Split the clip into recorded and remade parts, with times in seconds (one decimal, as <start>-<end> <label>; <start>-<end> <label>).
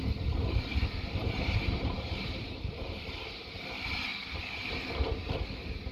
0.0-1.2 recorded; 1.2-3.1 remade; 3.1-5.9 recorded